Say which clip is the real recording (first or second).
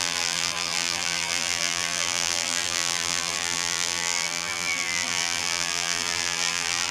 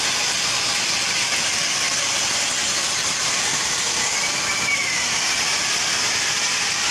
second